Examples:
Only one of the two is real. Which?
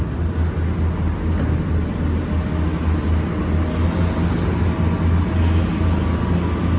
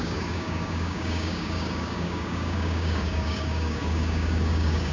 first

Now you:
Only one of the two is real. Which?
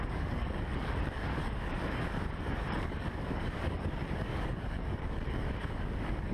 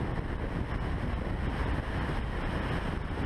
second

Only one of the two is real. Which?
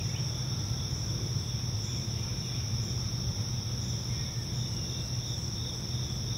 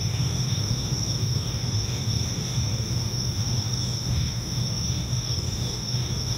first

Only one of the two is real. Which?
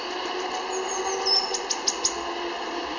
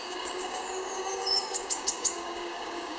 first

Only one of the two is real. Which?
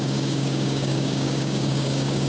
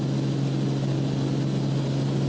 second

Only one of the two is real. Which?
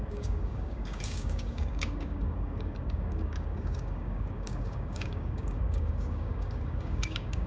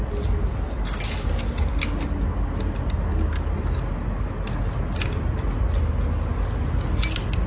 second